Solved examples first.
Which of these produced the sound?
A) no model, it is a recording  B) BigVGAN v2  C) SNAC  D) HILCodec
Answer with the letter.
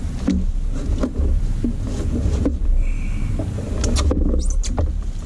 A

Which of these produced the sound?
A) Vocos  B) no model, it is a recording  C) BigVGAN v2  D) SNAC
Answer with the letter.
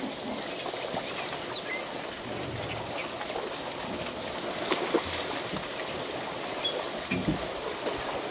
B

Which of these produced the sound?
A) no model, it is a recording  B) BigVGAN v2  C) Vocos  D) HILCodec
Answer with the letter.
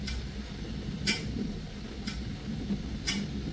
A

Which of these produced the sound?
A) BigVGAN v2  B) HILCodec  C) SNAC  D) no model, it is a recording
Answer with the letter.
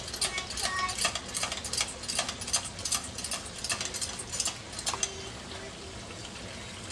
D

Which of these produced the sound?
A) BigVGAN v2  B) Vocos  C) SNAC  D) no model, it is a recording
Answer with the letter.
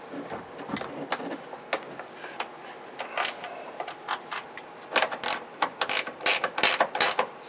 D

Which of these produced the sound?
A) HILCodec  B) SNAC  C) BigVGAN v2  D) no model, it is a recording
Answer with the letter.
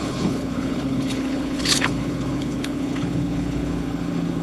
A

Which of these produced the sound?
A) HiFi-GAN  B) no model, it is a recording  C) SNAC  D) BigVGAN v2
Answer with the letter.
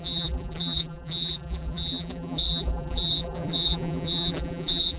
D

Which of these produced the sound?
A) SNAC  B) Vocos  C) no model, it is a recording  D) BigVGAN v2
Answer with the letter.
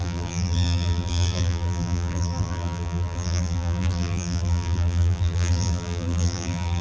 D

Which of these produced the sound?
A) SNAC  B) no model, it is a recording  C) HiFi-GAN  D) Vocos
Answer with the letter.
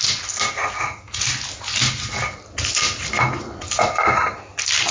B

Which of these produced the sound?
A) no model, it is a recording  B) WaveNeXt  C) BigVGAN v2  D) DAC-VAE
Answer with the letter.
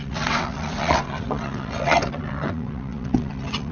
B